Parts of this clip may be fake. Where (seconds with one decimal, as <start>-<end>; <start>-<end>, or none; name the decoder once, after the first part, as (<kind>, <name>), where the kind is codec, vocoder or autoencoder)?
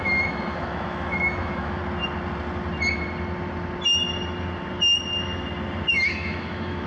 0.0-1.8 (autoencoder, DAC-VAE); 5.9-6.9